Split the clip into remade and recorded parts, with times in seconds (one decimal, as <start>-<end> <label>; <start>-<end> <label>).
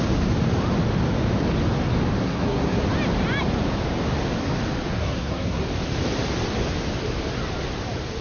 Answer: 0.0-2.2 recorded; 2.2-2.8 remade; 2.8-4.9 recorded; 4.9-5.6 remade; 5.6-8.2 recorded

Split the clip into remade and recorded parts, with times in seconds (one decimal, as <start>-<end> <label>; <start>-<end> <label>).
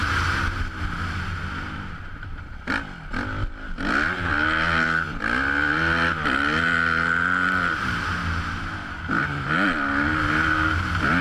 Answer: 0.0-11.2 recorded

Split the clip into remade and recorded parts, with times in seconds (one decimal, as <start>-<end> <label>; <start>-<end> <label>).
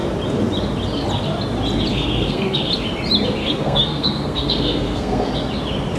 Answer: 0.0-1.9 recorded; 1.9-2.7 remade; 2.7-3.4 recorded; 3.4-5.3 remade; 5.3-6.0 recorded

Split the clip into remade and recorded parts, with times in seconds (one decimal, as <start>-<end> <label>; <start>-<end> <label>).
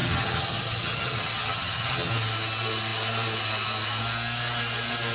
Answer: 0.0-2.1 remade; 2.1-5.1 recorded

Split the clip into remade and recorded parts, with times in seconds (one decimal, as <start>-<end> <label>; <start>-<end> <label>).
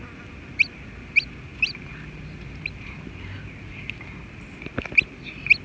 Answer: 0.0-5.6 recorded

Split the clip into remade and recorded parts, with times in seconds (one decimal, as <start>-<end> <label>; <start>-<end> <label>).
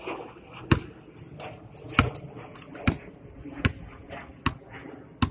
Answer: 0.0-2.5 recorded; 2.5-4.3 remade; 4.3-5.3 recorded